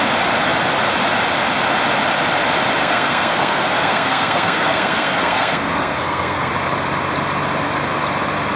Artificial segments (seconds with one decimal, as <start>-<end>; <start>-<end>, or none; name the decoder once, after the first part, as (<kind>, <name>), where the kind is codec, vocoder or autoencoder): 2.8-6.5 (codec, SNAC)